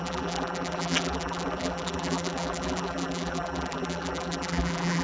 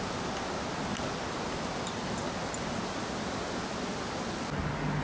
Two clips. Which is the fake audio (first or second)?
first